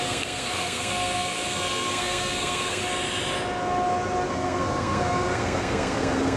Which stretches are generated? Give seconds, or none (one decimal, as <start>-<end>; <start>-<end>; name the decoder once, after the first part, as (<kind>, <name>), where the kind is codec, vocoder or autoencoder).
0.0-2.8 (codec, SNAC); 4.3-6.4